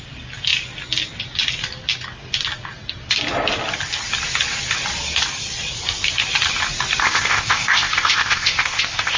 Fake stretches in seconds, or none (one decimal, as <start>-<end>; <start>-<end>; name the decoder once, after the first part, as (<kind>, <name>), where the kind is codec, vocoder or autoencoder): 7.0-9.2 (codec, ZipCodec)